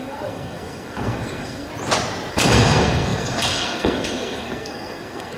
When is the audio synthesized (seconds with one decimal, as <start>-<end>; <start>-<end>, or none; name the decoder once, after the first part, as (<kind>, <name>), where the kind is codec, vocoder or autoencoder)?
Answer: 0.0-1.7 (codec, SNAC); 2.3-5.4